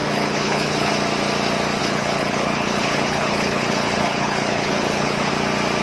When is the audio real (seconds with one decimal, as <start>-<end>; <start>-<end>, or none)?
0.9-1.8; 5.3-5.8